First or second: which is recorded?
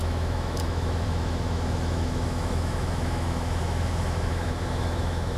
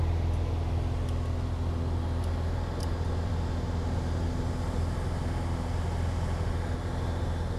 second